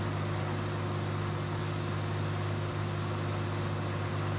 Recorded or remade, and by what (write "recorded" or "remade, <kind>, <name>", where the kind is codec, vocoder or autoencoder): recorded